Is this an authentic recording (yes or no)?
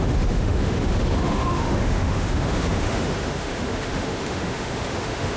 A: no